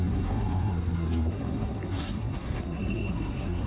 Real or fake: fake